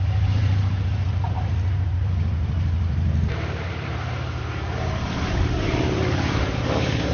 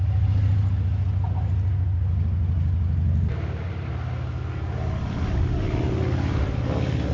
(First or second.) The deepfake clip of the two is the first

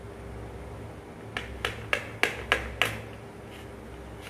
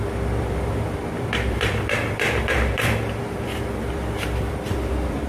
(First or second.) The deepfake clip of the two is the second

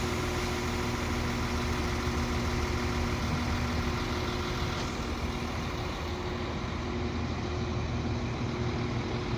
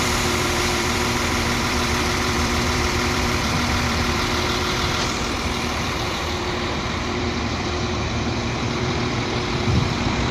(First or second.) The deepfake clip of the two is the second